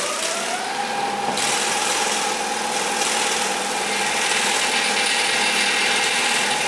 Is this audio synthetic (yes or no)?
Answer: no